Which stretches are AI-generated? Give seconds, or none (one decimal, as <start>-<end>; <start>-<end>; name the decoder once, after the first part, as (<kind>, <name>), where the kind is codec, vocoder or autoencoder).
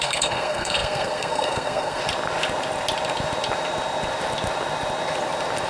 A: 0.0-2.0 (codec, SNAC)